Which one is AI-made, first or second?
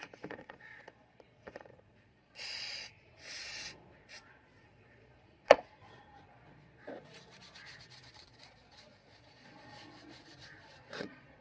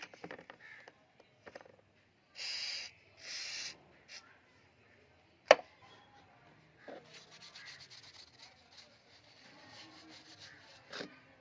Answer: first